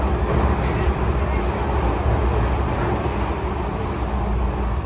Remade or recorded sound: recorded